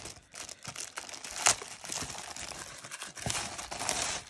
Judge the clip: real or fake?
real